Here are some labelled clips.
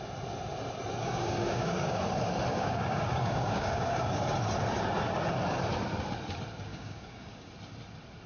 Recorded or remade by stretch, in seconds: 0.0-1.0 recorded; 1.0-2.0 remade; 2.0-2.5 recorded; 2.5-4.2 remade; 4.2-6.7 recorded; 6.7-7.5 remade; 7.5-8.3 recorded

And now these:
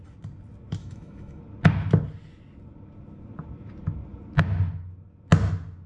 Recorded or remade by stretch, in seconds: 0.0-0.8 recorded; 0.8-1.4 remade; 1.4-5.9 recorded